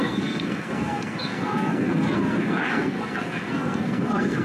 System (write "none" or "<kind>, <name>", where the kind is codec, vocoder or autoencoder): codec, SNAC